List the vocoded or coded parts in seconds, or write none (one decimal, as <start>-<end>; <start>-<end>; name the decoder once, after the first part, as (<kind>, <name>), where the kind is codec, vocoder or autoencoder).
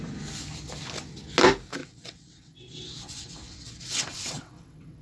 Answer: 1.8-5.0 (vocoder, WaveNeXt)